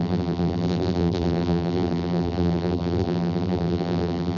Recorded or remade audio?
remade